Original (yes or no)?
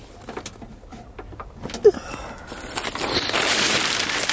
yes